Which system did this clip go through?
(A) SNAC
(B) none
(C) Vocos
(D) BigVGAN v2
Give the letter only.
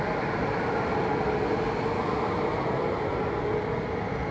B